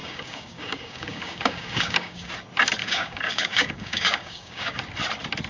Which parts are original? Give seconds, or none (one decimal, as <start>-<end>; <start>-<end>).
2.3-2.8; 4.8-5.5